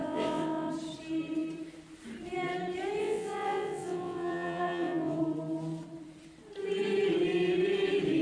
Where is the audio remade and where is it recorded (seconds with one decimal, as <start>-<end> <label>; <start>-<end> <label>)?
0.0-0.7 remade; 0.7-3.0 recorded; 3.0-5.2 remade; 5.2-8.2 recorded

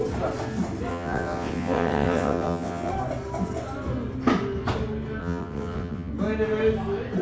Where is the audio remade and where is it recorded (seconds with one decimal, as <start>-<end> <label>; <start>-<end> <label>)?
0.0-0.9 recorded; 0.9-2.9 remade; 2.9-5.2 recorded; 5.2-6.1 remade; 6.1-7.2 recorded

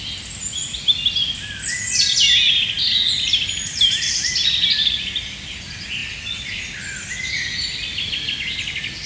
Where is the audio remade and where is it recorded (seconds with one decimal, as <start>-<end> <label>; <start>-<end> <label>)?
0.0-9.1 recorded

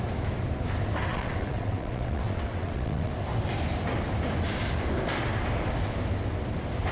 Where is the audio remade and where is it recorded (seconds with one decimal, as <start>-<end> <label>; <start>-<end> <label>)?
0.0-1.1 recorded; 1.1-3.1 remade; 3.1-6.9 recorded

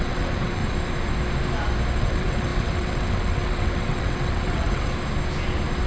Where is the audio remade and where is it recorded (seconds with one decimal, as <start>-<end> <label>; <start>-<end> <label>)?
0.0-0.6 remade; 0.6-2.0 recorded; 2.0-4.9 remade; 4.9-5.9 recorded

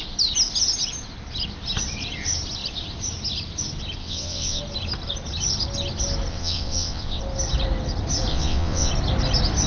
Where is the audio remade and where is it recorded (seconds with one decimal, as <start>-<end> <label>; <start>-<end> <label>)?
0.0-4.0 recorded; 4.0-4.6 remade; 4.6-6.3 recorded; 6.3-7.2 remade; 7.2-8.3 recorded; 8.3-8.9 remade; 8.9-9.7 recorded

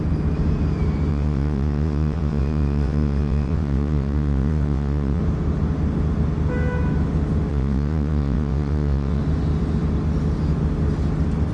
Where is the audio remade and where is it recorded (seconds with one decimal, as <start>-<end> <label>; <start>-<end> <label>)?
0.0-1.1 recorded; 1.1-5.2 remade; 5.2-7.5 recorded; 7.5-9.2 remade; 9.2-11.5 recorded